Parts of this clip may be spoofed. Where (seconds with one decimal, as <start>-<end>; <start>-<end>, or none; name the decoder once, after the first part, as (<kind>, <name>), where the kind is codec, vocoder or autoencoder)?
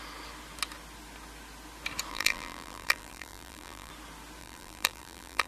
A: 2.1-3.9 (vocoder, BigVGAN v2); 4.4-5.5